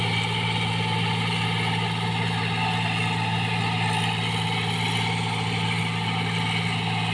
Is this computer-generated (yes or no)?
no